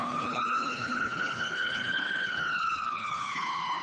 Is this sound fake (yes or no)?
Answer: yes